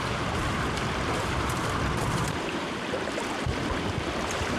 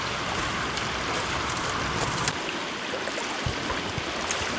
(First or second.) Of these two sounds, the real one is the second